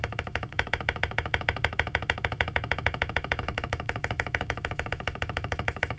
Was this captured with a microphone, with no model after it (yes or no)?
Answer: no